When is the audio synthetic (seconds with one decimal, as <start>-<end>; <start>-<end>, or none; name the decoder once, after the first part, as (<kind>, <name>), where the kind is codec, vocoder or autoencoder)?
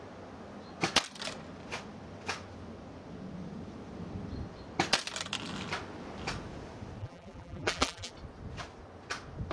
7.0-8.1 (vocoder, BigVGAN v2)